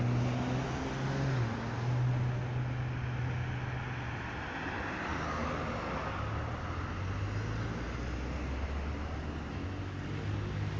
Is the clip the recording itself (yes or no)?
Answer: yes